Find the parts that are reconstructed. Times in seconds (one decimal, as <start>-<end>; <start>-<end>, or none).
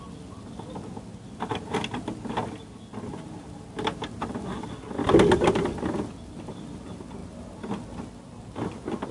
none